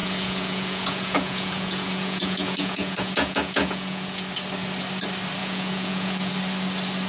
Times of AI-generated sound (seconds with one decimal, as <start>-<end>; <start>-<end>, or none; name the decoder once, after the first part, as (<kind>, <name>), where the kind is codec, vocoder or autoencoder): 0.0-4.3 (vocoder, Vocos); 5.4-6.3